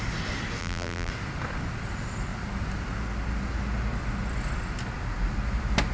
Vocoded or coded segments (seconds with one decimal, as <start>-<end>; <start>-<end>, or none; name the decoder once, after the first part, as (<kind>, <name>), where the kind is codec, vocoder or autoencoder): 0.6-1.1 (vocoder, BigVGAN v2)